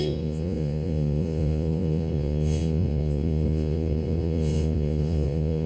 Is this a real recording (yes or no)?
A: no